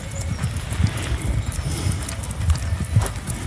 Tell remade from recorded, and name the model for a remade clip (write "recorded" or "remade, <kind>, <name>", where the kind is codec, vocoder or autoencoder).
recorded